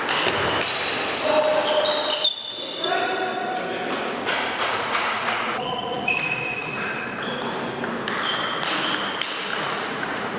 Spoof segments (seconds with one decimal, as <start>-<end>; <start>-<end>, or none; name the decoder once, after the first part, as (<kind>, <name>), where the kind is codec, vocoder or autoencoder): 3.8-6.8 (vocoder, Vocos); 9.5-10.4